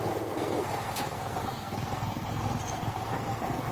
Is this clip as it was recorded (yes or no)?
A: no